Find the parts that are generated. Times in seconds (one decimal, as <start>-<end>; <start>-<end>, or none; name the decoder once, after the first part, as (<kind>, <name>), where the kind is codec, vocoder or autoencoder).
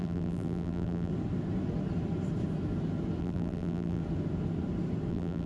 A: 0.0-1.1 (vocoder, BigVGAN v2); 3.2-4.0; 5.1-5.5